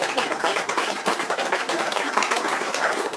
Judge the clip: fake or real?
fake